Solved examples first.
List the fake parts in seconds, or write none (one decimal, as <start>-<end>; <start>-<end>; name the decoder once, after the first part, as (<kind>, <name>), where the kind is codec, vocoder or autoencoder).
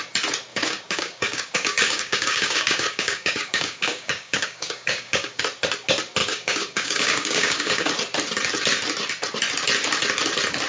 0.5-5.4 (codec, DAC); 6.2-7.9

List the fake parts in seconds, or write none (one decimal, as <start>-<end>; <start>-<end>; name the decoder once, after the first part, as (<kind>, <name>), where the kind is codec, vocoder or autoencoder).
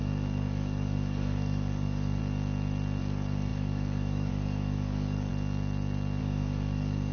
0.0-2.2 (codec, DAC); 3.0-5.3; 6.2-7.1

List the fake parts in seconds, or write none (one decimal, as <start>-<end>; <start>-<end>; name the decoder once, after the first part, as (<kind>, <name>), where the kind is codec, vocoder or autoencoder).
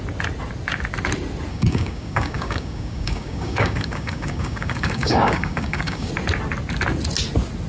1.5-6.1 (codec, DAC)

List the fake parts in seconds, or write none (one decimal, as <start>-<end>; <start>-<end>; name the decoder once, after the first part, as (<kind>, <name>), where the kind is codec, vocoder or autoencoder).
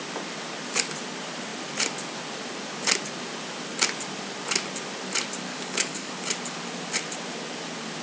5.5-6.1 (codec, DAC)